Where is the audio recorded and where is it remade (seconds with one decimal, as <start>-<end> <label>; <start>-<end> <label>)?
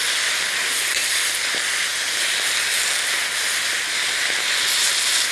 0.0-5.3 recorded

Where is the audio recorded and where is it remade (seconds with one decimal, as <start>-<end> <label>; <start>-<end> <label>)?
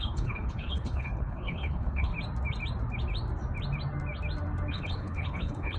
0.0-2.1 remade; 2.1-4.7 recorded; 4.7-5.8 remade